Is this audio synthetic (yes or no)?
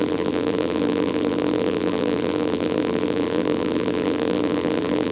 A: yes